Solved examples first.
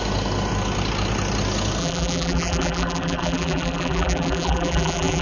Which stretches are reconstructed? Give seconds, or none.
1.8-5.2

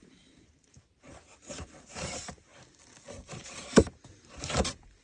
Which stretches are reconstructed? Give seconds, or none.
0.0-2.5; 3.3-5.0

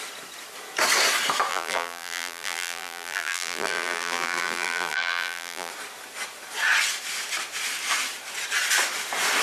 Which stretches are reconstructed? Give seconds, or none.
1.5-5.7

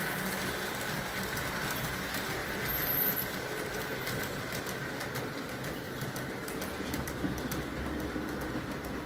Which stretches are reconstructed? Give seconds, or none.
2.4-3.0

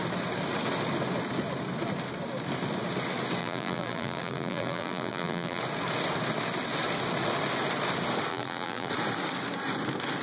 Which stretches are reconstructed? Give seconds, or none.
3.4-5.6; 8.3-8.9

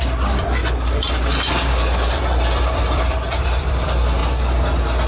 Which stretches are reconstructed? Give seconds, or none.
0.0-0.6; 2.1-4.2

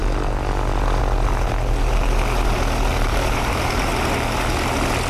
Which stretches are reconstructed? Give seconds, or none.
2.9-3.9

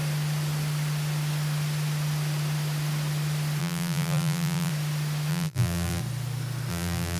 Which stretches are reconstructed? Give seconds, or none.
3.6-4.7; 5.3-6.0; 6.7-7.2